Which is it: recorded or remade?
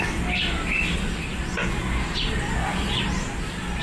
recorded